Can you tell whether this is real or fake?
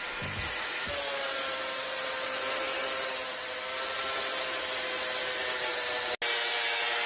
real